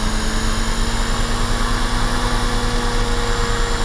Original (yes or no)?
yes